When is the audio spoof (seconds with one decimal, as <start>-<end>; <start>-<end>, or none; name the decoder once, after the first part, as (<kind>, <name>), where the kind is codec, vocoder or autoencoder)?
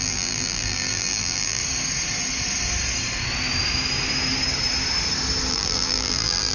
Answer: 0.0-1.6 (vocoder, BigVGAN v2); 5.5-6.5